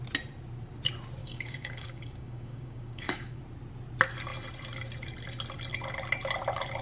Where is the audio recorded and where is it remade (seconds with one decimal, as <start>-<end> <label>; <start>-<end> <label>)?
0.0-1.2 recorded; 1.2-3.4 remade; 3.4-6.8 recorded